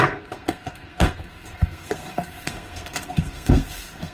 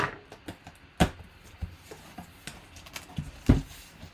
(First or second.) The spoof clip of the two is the first